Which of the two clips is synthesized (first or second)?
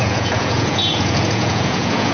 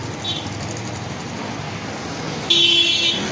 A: first